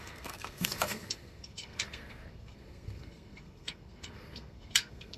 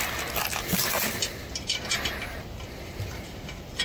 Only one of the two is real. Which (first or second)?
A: second